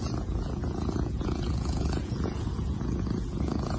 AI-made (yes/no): yes